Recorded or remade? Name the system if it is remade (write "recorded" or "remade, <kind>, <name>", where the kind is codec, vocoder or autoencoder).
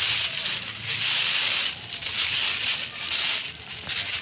recorded